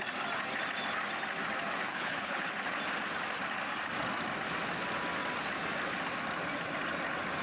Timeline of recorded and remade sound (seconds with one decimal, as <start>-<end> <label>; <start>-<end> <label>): 0.0-1.9 recorded; 1.9-2.5 remade; 2.5-7.4 recorded